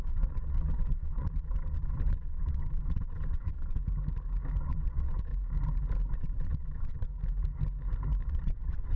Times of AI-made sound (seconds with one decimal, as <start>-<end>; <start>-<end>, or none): 0.0-3.8; 4.6-5.3; 6.1-7.1; 8.3-9.0